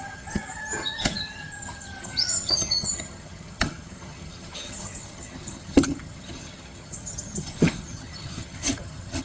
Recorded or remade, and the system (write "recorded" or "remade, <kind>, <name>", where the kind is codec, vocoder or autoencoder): remade, vocoder, HiFi-GAN